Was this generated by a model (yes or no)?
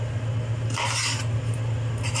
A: no